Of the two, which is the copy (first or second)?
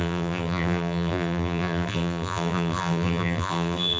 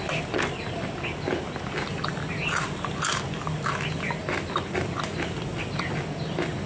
first